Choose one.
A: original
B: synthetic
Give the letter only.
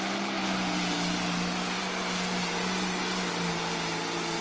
A